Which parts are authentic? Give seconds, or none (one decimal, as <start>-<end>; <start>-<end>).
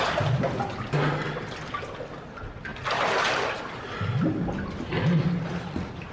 0.0-6.1